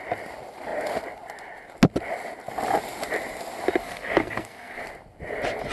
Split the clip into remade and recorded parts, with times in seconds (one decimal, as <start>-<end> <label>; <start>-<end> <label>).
0.0-3.8 recorded; 3.8-4.8 remade; 4.8-5.7 recorded

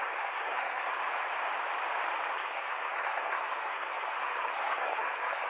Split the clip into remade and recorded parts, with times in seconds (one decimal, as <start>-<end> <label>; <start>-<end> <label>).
0.0-1.0 remade; 1.0-2.3 recorded; 2.3-5.5 remade

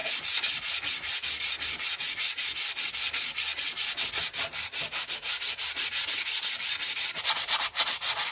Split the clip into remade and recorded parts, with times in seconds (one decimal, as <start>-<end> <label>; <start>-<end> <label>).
0.0-8.3 recorded

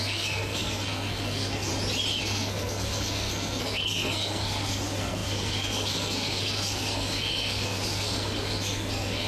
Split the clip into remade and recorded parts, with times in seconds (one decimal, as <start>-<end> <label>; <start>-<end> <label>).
0.0-1.7 remade; 1.7-2.2 recorded; 2.2-9.3 remade

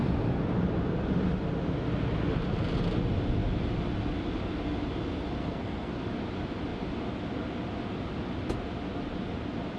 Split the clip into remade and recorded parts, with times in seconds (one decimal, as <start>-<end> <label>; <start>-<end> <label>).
0.0-5.4 recorded; 5.4-6.0 remade; 6.0-9.8 recorded

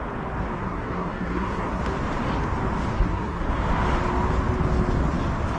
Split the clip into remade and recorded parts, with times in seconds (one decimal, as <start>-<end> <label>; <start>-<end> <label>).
0.0-0.6 recorded; 0.6-1.8 remade; 1.8-2.9 recorded; 2.9-3.5 remade; 3.5-5.6 recorded